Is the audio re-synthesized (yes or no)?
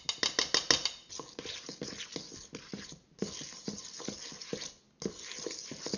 no